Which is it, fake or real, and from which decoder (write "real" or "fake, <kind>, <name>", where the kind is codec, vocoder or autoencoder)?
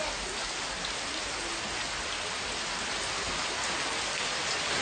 real